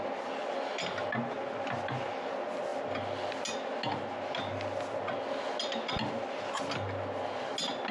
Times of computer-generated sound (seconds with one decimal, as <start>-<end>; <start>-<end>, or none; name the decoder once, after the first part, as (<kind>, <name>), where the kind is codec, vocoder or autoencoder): none